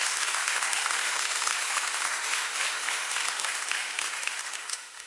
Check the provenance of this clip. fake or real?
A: fake